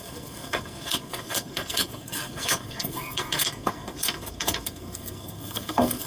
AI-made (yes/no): yes